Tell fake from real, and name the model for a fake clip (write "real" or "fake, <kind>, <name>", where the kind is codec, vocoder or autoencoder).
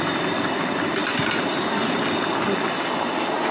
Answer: real